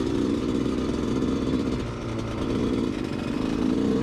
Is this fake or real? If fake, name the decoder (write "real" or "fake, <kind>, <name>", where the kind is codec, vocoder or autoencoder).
fake, vocoder, BigVGAN v2